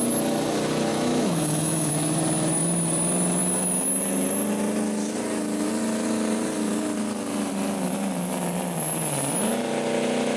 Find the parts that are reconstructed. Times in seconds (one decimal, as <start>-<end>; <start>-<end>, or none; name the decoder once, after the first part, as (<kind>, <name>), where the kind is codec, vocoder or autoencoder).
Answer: 0.9-1.9 (autoencoder, DAC-VAE)